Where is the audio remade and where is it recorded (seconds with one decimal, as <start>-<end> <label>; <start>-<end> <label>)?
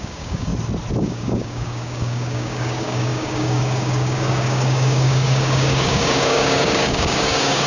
0.0-0.5 remade; 0.5-1.0 recorded; 1.0-7.7 remade